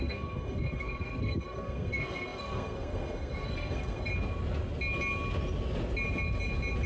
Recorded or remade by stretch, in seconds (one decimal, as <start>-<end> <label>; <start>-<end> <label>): 0.0-4.1 remade; 4.1-6.9 recorded